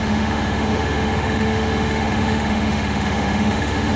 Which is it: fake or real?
fake